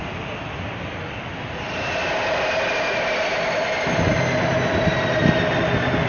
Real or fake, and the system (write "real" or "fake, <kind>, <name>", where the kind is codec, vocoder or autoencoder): real